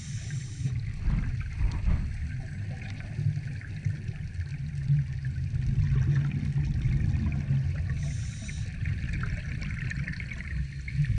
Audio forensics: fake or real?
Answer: real